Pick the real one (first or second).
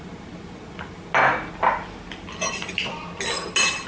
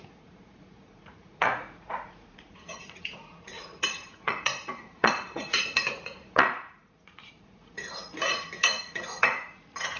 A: first